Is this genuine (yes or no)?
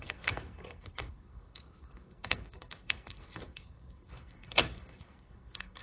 no